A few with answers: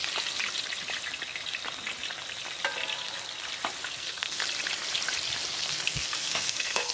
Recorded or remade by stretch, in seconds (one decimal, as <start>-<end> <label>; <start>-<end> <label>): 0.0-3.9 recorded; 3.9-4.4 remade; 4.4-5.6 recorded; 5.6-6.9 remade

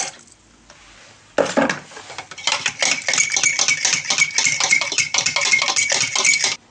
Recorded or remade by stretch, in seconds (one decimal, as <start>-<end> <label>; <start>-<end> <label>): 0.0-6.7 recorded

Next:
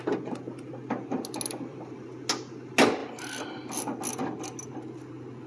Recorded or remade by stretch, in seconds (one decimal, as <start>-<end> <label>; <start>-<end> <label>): 0.0-5.5 recorded

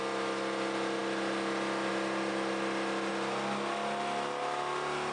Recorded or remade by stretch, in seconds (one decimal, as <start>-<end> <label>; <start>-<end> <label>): 0.0-5.1 recorded

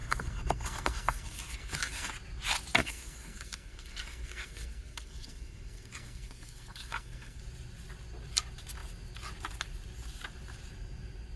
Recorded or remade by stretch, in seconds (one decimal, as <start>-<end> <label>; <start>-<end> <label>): 0.0-2.1 remade; 2.1-2.8 recorded; 2.8-7.4 remade; 7.4-11.4 recorded

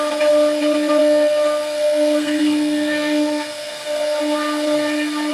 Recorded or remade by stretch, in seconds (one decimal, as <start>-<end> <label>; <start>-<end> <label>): 0.0-1.0 recorded; 1.0-4.2 remade; 4.2-5.3 recorded